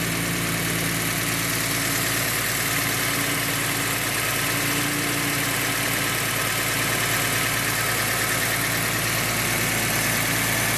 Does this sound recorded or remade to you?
recorded